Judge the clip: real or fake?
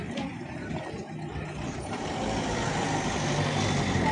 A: real